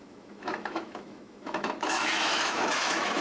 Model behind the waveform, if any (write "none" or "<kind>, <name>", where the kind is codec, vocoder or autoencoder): autoencoder, DAC-VAE